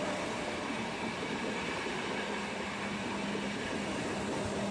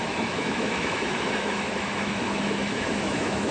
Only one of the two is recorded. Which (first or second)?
first